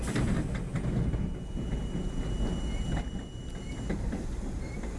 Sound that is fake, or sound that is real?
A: real